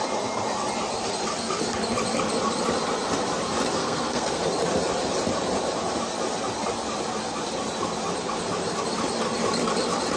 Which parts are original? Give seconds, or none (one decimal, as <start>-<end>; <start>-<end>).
0.0-3.8; 4.4-10.2